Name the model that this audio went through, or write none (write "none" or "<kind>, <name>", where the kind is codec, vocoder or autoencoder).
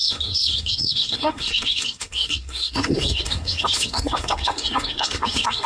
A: codec, SNAC